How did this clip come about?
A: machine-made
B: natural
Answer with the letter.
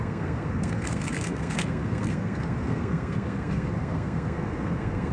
A